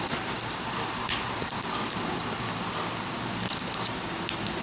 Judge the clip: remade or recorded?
recorded